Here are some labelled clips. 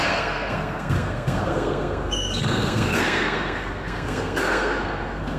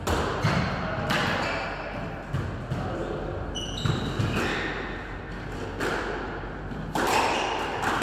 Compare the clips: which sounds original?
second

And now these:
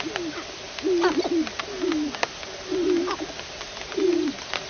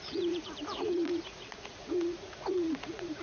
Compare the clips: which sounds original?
first